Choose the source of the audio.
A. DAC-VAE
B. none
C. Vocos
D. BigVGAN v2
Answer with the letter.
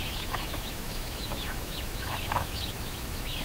A